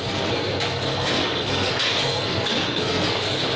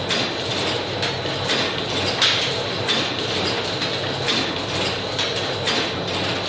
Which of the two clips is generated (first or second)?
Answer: first